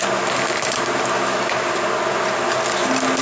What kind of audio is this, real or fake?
real